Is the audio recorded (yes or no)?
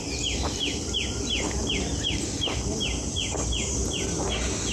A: yes